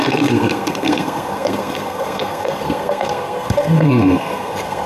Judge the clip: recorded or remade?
remade